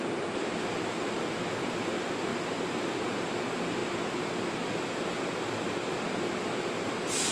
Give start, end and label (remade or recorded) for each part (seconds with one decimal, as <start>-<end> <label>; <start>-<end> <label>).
0.0-7.3 recorded